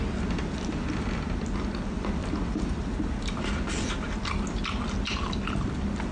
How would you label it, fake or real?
real